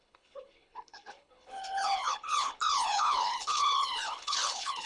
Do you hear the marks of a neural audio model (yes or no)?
yes